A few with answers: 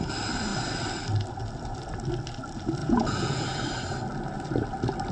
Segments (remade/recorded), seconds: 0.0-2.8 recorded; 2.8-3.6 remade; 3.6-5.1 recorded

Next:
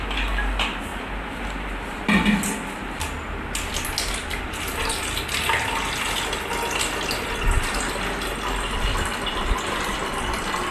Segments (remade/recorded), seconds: 0.0-10.7 recorded

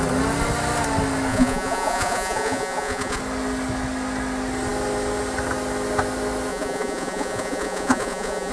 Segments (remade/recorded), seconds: 0.0-1.3 recorded; 1.3-3.2 remade; 3.2-6.5 recorded; 6.5-8.5 remade

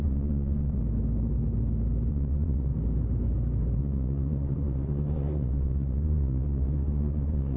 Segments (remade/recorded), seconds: 0.0-0.8 remade; 0.8-2.1 recorded; 2.1-2.7 remade; 2.7-3.8 recorded; 3.8-7.6 remade